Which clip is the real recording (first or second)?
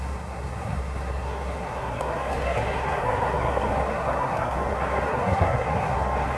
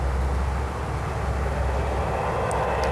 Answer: second